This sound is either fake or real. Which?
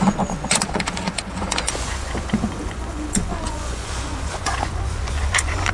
fake